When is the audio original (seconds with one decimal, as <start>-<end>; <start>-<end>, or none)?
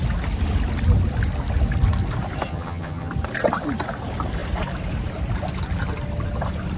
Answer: 0.0-2.5; 3.1-6.8